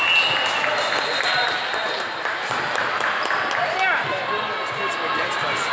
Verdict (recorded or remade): recorded